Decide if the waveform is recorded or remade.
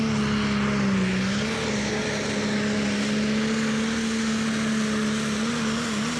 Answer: recorded